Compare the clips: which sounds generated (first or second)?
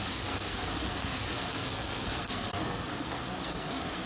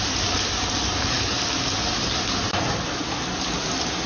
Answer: first